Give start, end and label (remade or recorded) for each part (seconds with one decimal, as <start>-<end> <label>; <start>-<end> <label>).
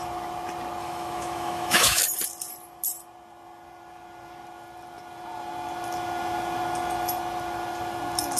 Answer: 0.0-0.8 recorded; 0.8-2.0 remade; 2.0-8.4 recorded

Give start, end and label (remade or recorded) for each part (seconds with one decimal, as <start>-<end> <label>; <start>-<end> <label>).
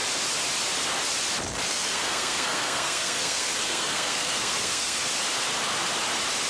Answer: 0.0-1.7 recorded; 1.7-5.1 remade; 5.1-6.5 recorded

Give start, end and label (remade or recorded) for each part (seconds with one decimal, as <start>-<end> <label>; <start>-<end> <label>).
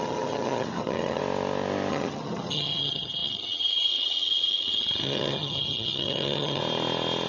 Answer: 0.0-1.2 remade; 1.2-1.9 recorded; 1.9-6.6 remade; 6.6-7.3 recorded